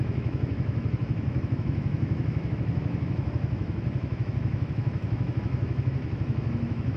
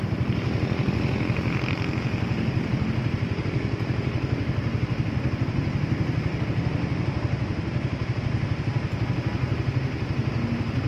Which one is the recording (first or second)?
second